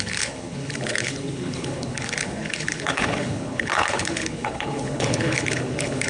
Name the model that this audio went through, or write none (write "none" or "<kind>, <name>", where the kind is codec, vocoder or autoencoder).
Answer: codec, HILCodec